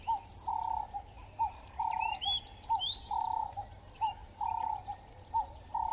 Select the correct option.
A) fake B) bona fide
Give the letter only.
B